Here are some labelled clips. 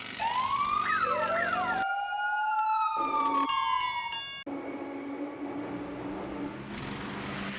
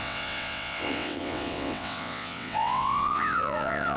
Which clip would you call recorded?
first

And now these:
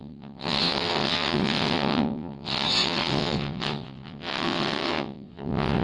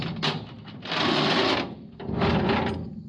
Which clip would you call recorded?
second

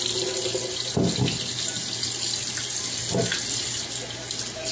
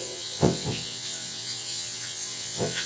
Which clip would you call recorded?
first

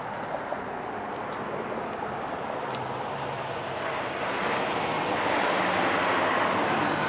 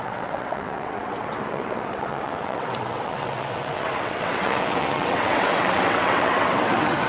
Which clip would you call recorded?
first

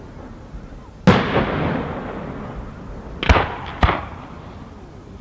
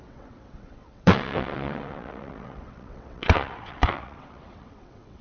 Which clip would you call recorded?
first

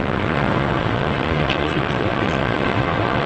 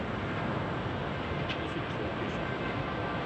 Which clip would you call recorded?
second